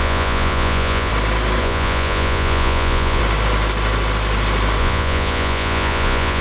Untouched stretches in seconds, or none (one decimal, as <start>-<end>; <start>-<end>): 1.1-1.6; 3.2-4.8